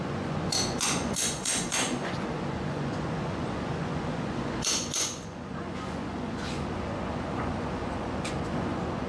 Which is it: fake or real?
fake